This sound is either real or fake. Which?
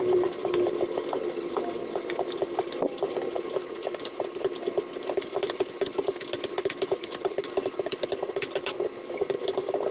real